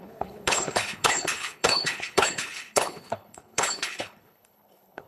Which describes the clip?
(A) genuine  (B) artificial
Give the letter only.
B